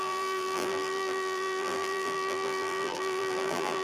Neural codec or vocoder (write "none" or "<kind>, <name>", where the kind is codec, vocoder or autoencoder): vocoder, BigVGAN v2